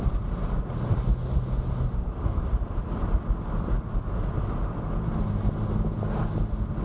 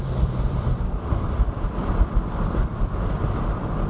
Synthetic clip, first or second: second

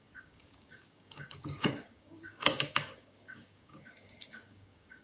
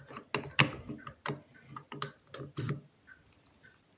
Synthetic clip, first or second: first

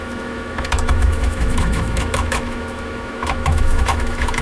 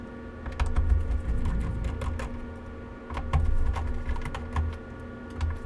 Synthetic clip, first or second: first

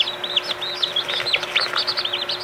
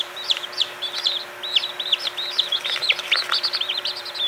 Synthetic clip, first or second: second